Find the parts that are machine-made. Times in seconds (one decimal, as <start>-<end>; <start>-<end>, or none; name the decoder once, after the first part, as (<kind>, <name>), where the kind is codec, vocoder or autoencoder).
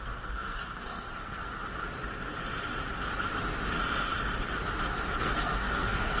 0.0-1.5 (codec, SNAC); 5.2-6.2